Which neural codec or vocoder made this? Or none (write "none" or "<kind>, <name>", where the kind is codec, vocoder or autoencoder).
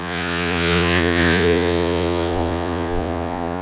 vocoder, Vocos